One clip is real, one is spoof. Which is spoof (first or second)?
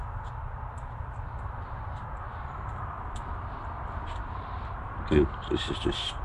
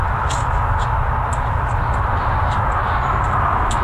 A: first